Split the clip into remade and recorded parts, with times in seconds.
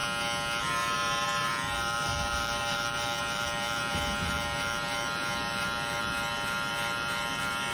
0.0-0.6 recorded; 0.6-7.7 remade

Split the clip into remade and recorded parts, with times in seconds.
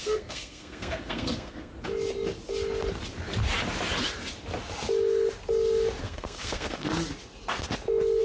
0.0-1.7 remade; 1.7-6.0 recorded; 6.0-6.9 remade; 6.9-8.2 recorded